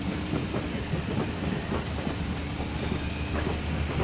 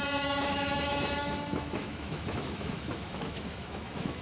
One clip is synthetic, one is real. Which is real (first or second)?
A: first